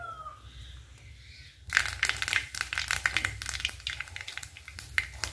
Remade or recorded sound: recorded